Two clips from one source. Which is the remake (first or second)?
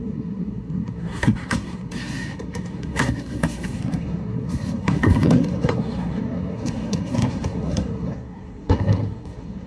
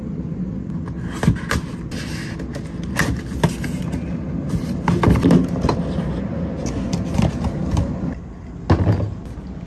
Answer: first